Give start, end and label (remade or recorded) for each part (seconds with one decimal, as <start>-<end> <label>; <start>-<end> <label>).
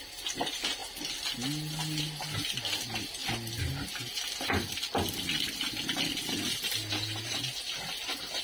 0.0-8.4 recorded